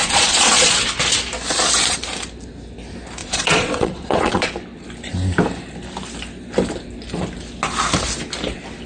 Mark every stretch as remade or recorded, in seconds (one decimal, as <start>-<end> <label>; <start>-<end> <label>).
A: 0.0-0.7 remade; 0.7-3.2 recorded; 3.2-4.5 remade; 4.5-8.9 recorded